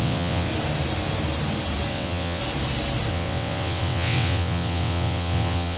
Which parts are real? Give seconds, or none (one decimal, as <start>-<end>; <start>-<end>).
0.5-1.9; 2.4-3.1